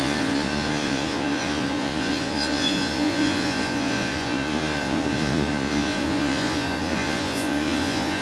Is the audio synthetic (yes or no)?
yes